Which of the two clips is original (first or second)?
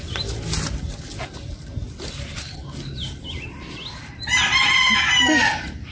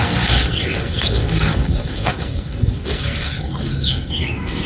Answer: first